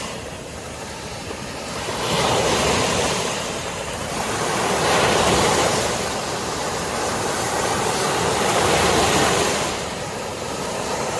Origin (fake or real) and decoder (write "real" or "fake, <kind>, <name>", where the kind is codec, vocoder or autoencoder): fake, vocoder, BigVGAN v2